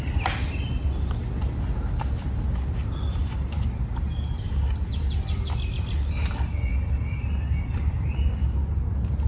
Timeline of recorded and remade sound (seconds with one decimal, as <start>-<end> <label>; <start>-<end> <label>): 0.0-9.3 recorded